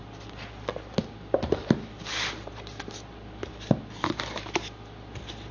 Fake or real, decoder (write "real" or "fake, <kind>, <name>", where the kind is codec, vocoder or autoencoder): real